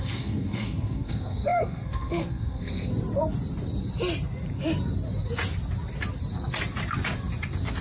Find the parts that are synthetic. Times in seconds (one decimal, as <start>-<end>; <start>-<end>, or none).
0.0-2.9